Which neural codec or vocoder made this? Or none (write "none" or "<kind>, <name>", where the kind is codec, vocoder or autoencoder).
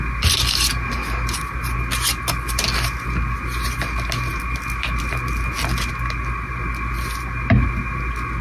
none